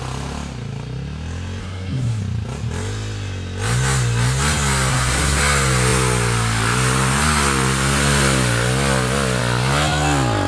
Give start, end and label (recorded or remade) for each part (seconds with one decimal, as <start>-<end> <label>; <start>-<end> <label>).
0.0-1.6 recorded; 1.6-2.2 remade; 2.2-4.9 recorded; 4.9-5.4 remade; 5.4-10.5 recorded